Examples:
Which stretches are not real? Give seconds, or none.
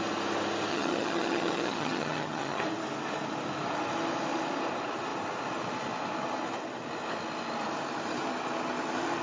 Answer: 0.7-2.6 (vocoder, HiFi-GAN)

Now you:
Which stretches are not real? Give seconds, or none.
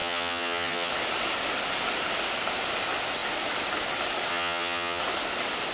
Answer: 0.0-0.9 (vocoder, HiFi-GAN); 4.3-5.0